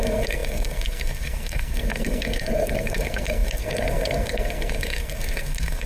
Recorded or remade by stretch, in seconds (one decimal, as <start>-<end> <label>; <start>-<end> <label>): 0.0-5.9 remade